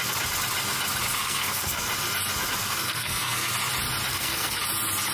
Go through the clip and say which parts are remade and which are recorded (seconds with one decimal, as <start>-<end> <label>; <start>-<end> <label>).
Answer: 0.0-1.2 recorded; 1.2-1.9 remade; 1.9-2.6 recorded; 2.6-3.5 remade; 3.5-4.1 recorded; 4.1-4.6 remade; 4.6-5.1 recorded